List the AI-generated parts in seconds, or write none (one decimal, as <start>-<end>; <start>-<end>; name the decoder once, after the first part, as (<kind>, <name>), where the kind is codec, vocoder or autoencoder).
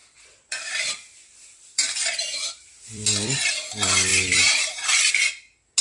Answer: 0.0-3.5 (vocoder, BigVGAN v2); 4.1-5.1